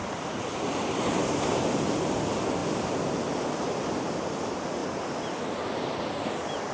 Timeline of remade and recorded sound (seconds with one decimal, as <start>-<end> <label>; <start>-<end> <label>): 0.0-1.9 remade; 1.9-6.7 recorded